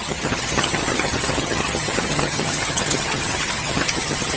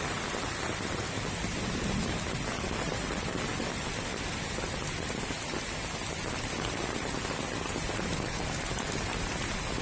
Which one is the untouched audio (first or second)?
second